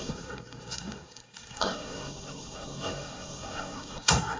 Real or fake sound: fake